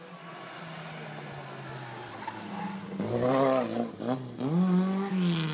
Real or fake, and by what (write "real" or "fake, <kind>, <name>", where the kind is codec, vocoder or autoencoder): real